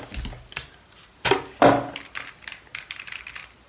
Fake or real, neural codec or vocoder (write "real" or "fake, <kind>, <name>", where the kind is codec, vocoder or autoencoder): real